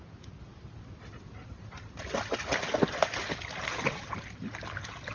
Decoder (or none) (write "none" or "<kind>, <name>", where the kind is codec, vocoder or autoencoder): none